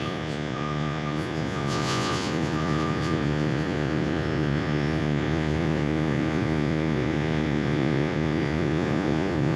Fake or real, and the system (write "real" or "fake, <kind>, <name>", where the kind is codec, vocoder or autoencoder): fake, vocoder, Vocos